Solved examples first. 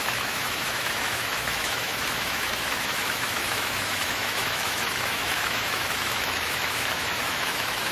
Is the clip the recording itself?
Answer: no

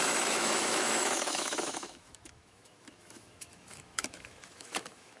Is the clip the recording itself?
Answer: no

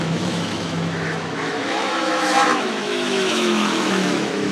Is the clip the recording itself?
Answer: no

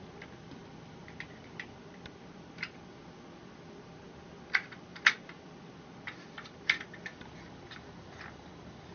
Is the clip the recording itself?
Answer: yes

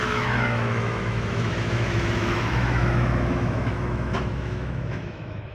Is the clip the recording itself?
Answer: no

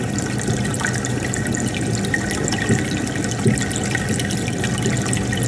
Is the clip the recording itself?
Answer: yes